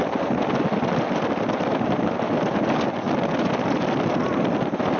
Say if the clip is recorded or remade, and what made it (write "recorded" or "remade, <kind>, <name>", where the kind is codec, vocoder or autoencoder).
recorded